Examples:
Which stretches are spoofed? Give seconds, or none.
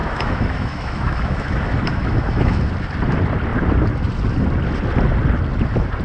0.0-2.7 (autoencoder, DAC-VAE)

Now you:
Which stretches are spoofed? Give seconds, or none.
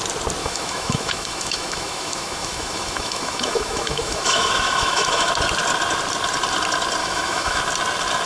0.4-5.3 (autoencoder, DAC-VAE); 7.0-7.6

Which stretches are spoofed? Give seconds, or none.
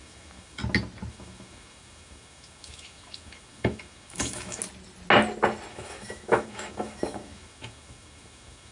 0.0-0.6 (autoencoder, DAC-VAE); 1.1-4.6; 5.7-8.7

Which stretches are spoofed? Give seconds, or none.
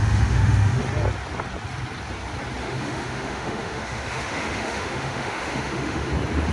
0.0-0.8 (autoencoder, DAC-VAE); 2.6-6.1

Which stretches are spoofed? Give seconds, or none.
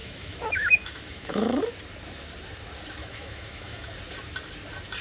0.0-1.6 (autoencoder, DAC-VAE); 3.0-4.0